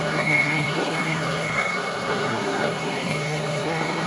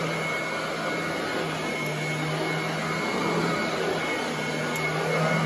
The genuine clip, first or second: second